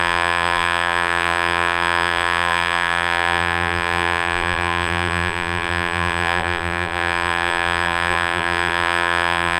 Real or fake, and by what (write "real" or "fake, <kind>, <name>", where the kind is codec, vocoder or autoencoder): fake, vocoder, BigVGAN v2